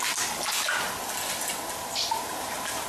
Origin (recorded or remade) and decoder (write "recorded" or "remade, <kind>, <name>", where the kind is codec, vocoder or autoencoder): recorded